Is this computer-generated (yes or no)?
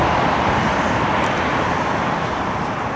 no